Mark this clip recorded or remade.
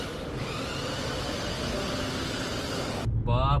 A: recorded